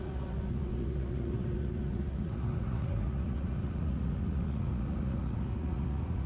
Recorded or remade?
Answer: remade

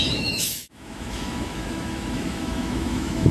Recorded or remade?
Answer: remade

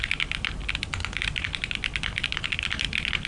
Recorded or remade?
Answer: recorded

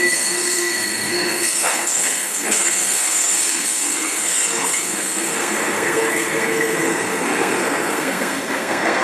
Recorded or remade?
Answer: remade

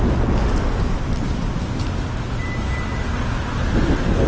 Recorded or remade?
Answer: recorded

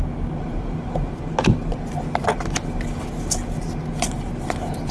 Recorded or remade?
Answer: recorded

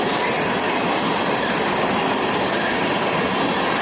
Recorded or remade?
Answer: recorded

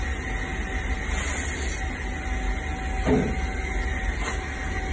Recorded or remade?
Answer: recorded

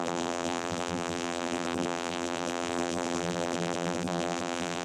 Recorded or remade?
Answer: remade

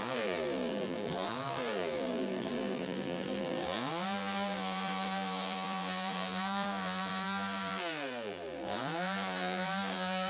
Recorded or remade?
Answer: remade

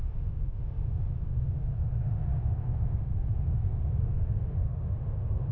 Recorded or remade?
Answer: remade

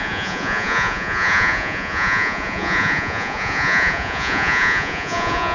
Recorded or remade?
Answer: remade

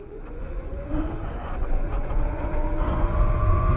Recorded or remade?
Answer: remade